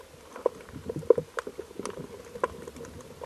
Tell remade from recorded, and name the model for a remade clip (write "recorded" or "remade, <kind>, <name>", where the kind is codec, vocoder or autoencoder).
recorded